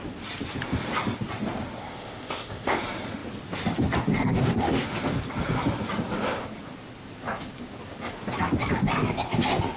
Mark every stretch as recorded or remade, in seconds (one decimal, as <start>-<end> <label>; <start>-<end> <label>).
0.0-1.8 recorded; 1.8-2.8 remade; 2.8-9.8 recorded